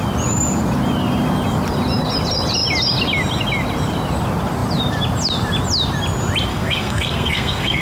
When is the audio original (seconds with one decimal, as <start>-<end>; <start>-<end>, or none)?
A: 0.0-6.5